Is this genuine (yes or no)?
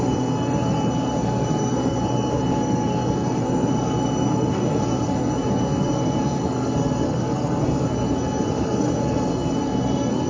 no